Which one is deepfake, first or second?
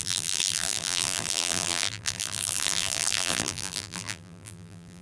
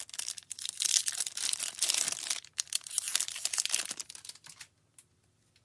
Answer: first